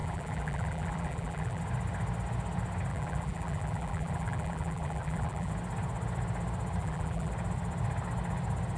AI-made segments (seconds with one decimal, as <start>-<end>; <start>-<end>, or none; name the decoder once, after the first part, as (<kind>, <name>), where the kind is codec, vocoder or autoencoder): 0.0-1.6 (vocoder, BigVGAN v2); 2.9-5.5; 6.8-7.3